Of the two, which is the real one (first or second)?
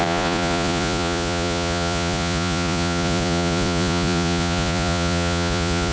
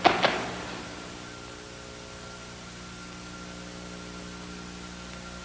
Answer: second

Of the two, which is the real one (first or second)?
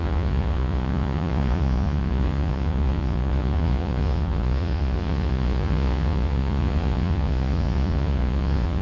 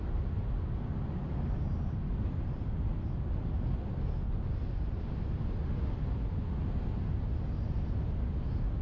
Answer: second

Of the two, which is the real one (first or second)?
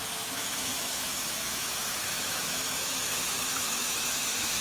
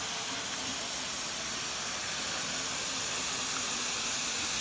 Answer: second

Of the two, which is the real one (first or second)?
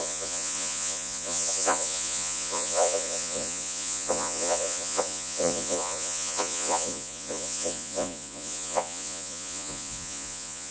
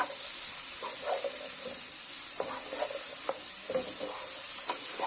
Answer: second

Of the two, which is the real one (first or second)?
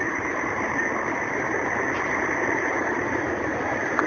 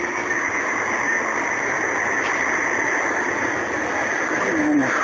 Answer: second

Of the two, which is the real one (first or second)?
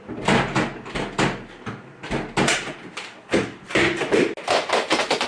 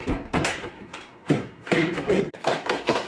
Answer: first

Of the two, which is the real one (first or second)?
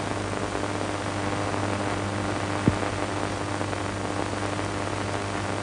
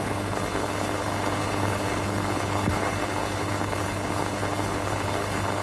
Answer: first